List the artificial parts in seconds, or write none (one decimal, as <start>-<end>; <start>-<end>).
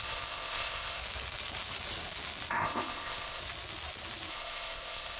0.0-1.0; 2.5-3.4; 4.3-5.2